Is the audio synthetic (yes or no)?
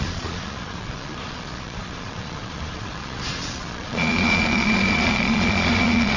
yes